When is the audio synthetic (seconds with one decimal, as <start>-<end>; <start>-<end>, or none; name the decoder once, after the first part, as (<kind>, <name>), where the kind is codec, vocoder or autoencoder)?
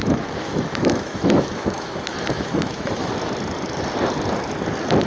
0.0-3.1 (autoencoder, DAC-VAE)